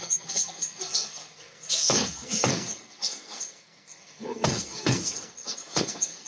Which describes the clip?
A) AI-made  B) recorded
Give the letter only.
A